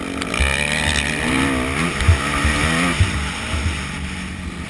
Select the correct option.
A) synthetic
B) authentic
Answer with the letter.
B